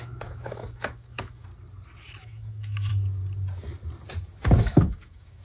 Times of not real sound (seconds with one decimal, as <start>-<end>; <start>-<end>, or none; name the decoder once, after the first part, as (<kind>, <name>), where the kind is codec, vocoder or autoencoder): 0.0-1.5 (autoencoder, DAC-VAE); 2.2-2.9; 4.6-5.4